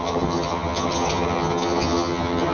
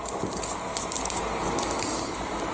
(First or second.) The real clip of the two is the second